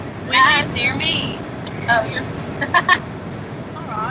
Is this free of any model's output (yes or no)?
yes